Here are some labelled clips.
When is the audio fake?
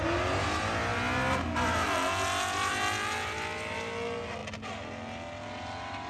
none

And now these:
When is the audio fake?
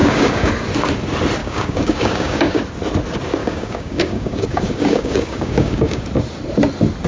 0.0-0.5 (codec, DAC); 1.4-2.6; 3.4-6.1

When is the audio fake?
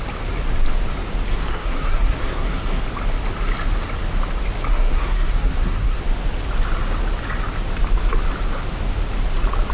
1.3-2.8 (codec, SNAC); 4.7-6.0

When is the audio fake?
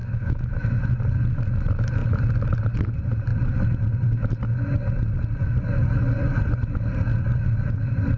0.0-0.8 (autoencoder, DAC-VAE)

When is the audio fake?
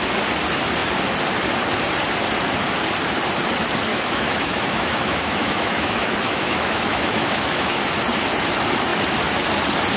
3.9-7.8 (autoencoder, DAC-VAE)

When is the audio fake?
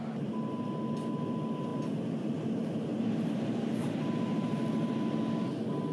none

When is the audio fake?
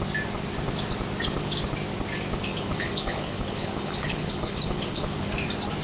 2.5-5.3 (codec, HILCodec)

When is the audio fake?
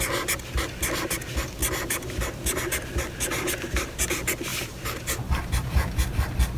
4.5-6.1 (vocoder, BigVGAN v2)